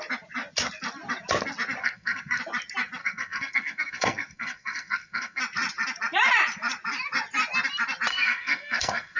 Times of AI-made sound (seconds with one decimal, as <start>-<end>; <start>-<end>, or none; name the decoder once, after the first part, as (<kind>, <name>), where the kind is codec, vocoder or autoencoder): 1.8-2.4 (codec, SNAC); 3.0-5.4; 8.1-9.2

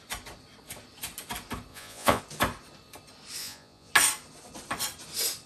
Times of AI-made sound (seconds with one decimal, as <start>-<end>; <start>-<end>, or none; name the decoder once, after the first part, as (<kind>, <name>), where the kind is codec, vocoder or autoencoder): 1.7-2.2 (vocoder, Vocos); 3.4-3.9

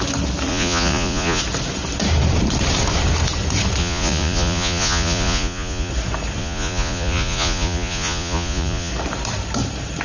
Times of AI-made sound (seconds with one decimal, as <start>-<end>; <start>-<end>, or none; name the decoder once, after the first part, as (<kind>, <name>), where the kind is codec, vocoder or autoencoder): 0.5-1.4 (vocoder, Vocos); 3.8-5.9; 6.4-8.9

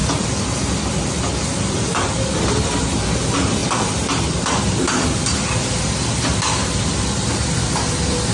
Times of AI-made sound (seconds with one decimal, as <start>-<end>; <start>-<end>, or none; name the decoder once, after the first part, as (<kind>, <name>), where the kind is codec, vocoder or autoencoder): none

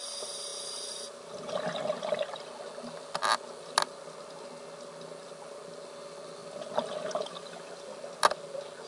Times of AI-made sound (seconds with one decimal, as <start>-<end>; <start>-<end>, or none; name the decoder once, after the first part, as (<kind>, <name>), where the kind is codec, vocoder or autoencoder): none

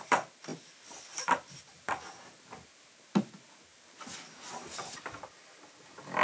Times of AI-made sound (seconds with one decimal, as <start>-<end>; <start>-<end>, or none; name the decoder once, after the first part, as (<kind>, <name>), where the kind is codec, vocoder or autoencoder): none